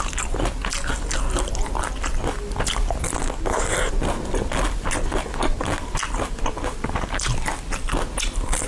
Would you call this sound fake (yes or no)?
no